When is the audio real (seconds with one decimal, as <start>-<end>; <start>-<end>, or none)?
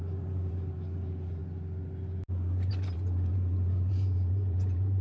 1.4-2.7